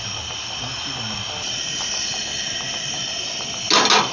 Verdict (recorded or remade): recorded